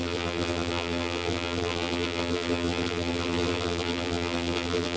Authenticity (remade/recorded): remade